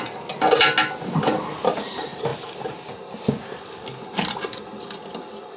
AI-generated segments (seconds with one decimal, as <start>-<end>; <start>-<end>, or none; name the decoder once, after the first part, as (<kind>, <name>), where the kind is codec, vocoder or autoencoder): none

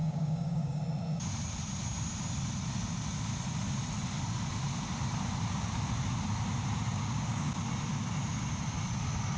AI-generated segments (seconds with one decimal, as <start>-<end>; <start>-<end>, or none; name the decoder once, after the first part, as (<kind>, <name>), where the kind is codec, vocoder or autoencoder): 0.0-0.8 (codec, DAC); 6.9-7.5

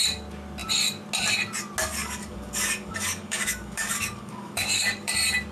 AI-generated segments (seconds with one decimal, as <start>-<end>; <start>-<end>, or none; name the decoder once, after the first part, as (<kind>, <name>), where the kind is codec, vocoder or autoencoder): 1.8-5.1 (codec, DAC)

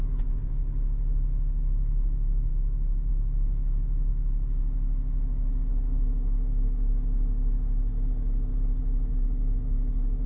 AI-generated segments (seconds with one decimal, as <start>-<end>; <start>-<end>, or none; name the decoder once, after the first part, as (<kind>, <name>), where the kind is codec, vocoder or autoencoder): 0.0-2.5 (codec, DAC); 3.1-4.1; 5.6-8.5; 9.1-10.3